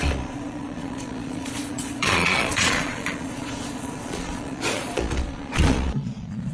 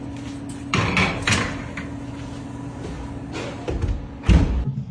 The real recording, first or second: second